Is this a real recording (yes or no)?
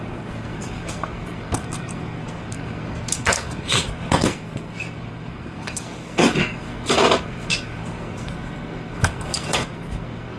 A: no